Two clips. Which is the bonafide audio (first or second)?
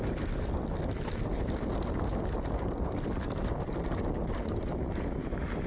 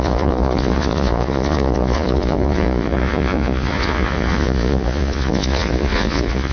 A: first